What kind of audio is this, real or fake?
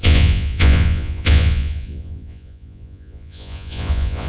fake